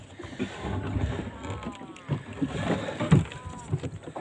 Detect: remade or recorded recorded